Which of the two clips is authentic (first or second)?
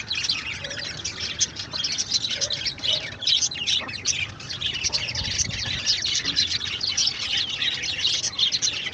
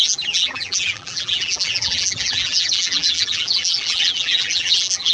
first